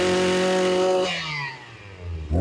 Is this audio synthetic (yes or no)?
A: no